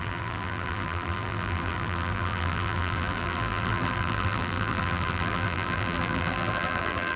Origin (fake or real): fake